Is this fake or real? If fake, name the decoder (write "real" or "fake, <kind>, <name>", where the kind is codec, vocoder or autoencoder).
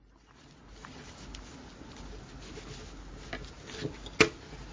real